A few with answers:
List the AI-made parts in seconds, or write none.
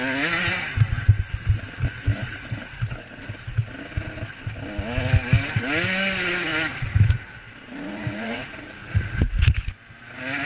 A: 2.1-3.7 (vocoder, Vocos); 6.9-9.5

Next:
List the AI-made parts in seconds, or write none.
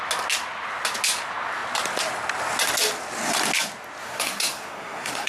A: 4.0-5.3 (codec, SNAC)